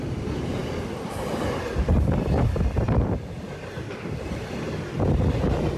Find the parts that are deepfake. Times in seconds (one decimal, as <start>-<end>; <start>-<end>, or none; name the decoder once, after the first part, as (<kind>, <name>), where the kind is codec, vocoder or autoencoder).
none